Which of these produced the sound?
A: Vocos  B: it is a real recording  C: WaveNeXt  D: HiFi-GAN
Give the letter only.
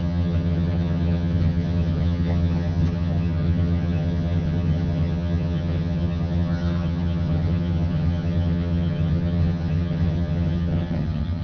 D